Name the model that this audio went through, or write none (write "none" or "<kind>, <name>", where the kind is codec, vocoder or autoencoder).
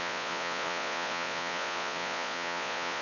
vocoder, Vocos